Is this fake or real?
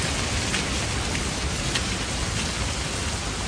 real